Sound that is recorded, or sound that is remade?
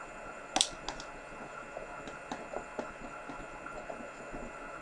recorded